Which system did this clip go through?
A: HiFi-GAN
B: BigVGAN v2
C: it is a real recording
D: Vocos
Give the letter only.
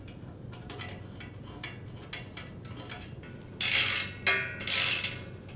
C